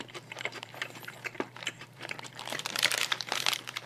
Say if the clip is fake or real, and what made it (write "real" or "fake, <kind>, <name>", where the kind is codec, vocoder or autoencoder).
fake, vocoder, BigVGAN v2